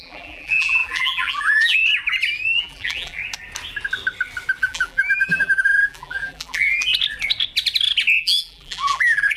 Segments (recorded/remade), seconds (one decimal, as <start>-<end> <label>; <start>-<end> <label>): 0.0-1.8 remade; 1.8-2.6 recorded; 2.6-3.2 remade; 3.2-4.6 recorded; 4.6-6.9 remade; 6.9-8.2 recorded; 8.2-9.4 remade